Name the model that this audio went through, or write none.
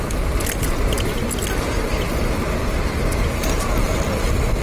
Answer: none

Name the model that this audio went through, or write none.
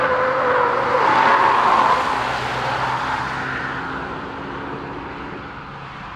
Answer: none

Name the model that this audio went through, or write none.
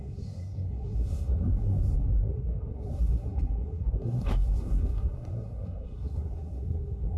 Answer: codec, SNAC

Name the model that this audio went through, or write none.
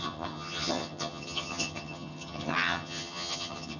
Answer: vocoder, HiFi-GAN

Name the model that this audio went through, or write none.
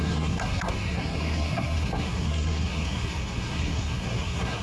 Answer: codec, SNAC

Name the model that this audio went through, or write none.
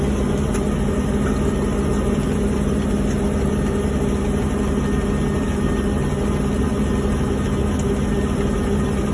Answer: none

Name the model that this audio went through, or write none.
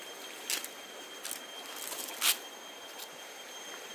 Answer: none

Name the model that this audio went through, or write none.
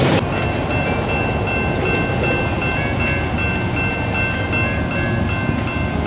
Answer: none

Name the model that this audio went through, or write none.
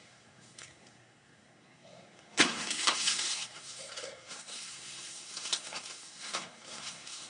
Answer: codec, SNAC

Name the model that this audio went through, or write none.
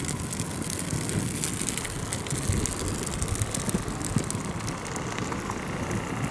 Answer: none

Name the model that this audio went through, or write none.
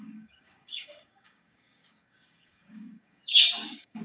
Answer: codec, DAC